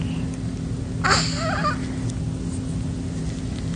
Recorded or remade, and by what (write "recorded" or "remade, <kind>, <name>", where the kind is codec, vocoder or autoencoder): recorded